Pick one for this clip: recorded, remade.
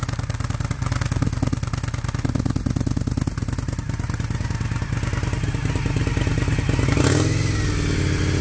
recorded